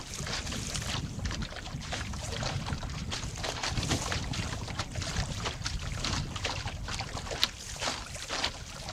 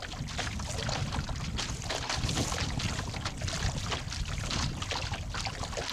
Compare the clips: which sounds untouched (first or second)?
second